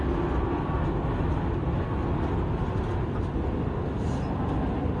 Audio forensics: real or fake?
real